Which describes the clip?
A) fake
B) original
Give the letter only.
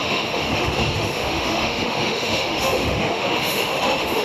A